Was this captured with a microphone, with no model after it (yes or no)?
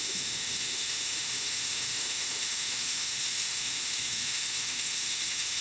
no